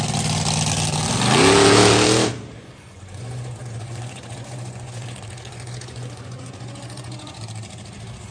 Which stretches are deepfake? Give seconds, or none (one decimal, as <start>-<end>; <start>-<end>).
2.6-7.4